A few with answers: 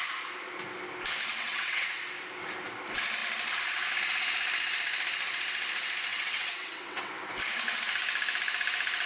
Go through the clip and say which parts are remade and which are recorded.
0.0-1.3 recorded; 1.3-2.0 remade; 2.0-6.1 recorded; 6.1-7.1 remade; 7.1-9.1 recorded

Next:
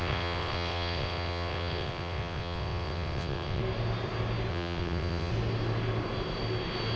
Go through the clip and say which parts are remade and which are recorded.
0.0-3.6 remade; 3.6-4.5 recorded; 4.5-5.3 remade; 5.3-7.0 recorded

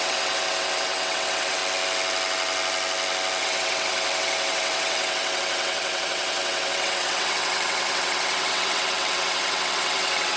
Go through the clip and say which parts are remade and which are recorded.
0.0-1.6 remade; 1.6-3.4 recorded; 3.4-10.4 remade

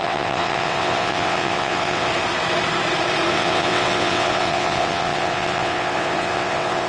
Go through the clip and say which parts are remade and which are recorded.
0.0-2.1 remade; 2.1-3.3 recorded; 3.3-6.9 remade